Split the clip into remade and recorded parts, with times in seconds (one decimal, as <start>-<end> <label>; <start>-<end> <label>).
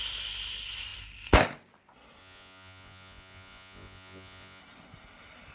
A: 0.0-2.2 recorded; 2.2-4.6 remade; 4.6-5.5 recorded